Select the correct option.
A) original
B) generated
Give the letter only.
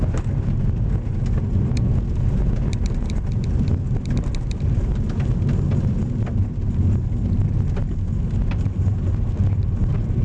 A